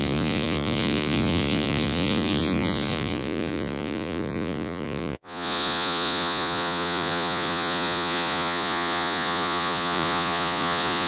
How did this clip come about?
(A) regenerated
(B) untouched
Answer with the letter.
A